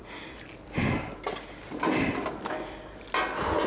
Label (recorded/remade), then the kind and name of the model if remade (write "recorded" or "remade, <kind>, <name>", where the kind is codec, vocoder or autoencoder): recorded